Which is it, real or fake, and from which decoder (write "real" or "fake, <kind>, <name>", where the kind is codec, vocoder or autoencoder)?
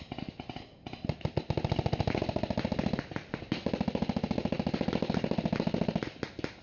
real